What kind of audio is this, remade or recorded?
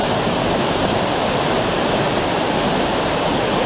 recorded